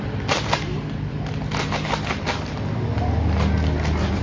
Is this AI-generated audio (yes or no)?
no